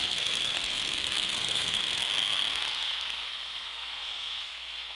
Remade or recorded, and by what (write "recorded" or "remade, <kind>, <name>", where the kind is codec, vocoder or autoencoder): remade, codec, SNAC